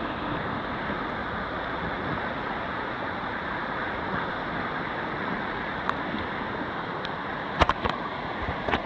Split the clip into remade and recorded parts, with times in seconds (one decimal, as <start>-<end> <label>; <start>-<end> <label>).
0.0-1.2 recorded; 1.2-4.3 remade; 4.3-5.2 recorded; 5.2-6.0 remade; 6.0-7.3 recorded; 7.3-8.9 remade